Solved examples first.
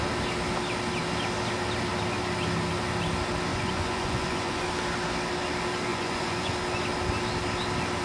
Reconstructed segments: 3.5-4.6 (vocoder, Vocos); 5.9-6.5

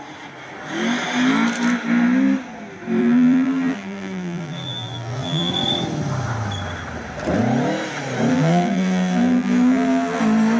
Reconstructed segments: 3.0-5.5 (vocoder, BigVGAN v2); 8.3-10.2

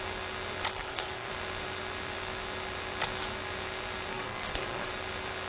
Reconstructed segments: 0.7-1.3 (codec, SNAC); 4.1-4.9

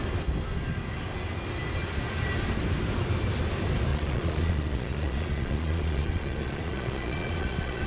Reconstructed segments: 3.9-7.9 (vocoder, Vocos)